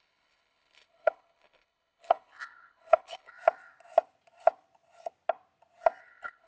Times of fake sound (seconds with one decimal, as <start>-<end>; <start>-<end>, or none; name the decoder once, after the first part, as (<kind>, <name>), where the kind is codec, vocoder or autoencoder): 0.0-3.3 (codec, HILCodec); 6.0-6.5